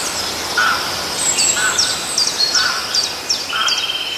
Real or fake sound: real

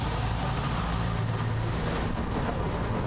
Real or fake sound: real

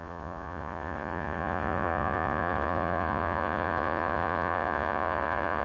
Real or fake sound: fake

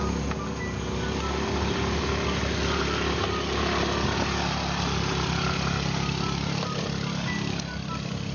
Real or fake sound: real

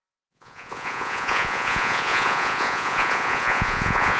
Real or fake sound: fake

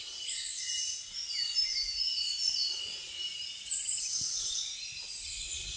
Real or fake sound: real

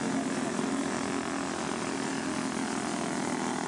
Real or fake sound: real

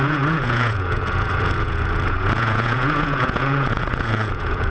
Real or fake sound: fake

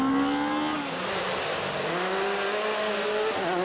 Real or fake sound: real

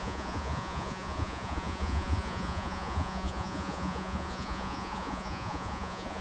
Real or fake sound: fake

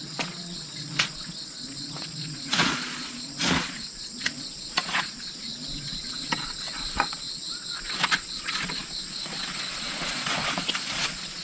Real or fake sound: fake